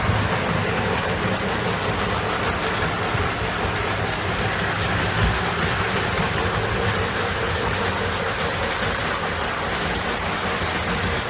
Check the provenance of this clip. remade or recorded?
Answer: recorded